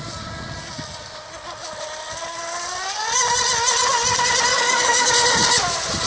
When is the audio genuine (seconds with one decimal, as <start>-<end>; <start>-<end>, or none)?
0.0-4.5; 5.1-6.1